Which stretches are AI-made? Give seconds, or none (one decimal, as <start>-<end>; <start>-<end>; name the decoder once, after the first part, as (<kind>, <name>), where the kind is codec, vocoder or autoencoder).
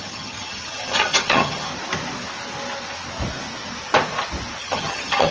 0.0-1.7 (vocoder, HiFi-GAN); 4.6-5.3